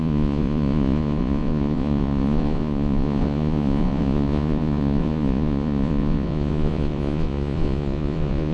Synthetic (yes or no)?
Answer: yes